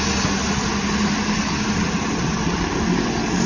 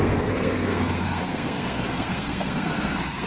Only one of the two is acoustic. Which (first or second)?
first